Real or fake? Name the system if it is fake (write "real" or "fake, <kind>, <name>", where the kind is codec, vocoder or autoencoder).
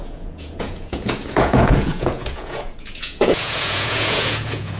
fake, vocoder, Vocos